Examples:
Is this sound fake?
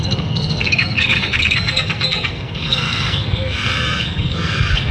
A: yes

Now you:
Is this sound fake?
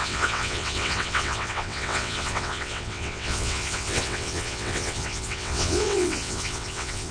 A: yes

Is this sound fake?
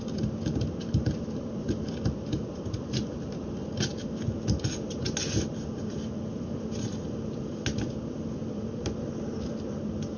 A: no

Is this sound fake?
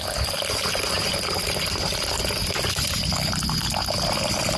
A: no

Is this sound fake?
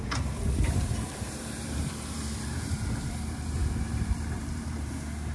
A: yes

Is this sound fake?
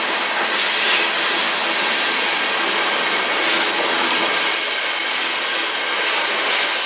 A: no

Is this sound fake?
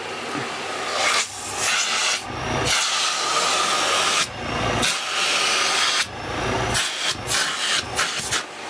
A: no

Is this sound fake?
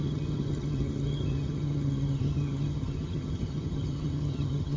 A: yes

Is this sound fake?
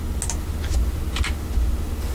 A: no